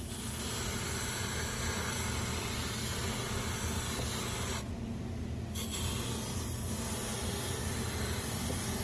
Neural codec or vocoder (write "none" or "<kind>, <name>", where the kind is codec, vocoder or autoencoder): none